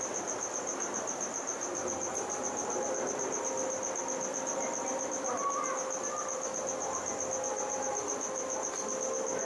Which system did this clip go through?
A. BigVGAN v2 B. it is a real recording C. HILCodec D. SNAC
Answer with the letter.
B